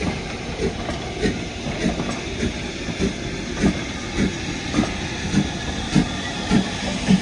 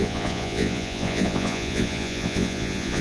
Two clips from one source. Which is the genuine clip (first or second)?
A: first